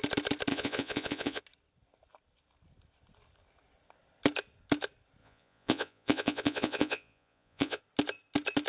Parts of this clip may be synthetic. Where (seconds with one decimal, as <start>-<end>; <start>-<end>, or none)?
0.5-1.4; 5.2-7.8